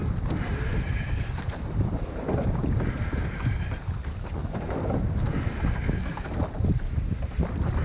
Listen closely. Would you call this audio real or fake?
real